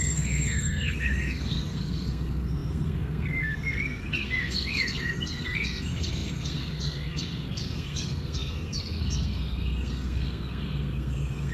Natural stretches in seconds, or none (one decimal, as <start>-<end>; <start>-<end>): none

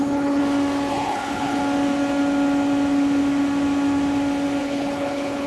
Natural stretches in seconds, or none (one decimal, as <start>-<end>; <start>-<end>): 0.4-0.9; 1.6-4.6

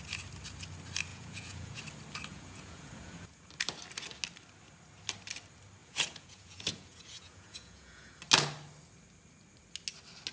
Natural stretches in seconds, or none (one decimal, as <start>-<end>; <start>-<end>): 0.0-1.1; 1.8-2.3; 3.5-5.8; 8.2-10.3

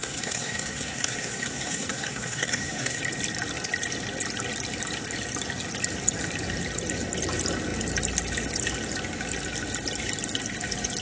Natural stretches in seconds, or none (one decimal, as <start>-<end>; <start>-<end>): 3.0-11.0

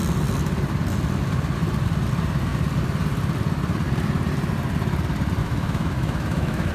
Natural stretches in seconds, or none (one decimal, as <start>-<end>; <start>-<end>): 0.0-5.4